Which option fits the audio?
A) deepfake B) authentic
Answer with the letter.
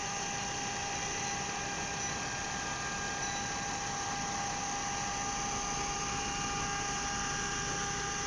B